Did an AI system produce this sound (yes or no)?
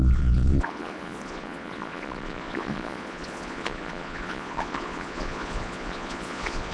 yes